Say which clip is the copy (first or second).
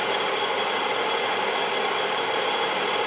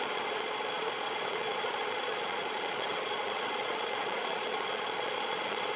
second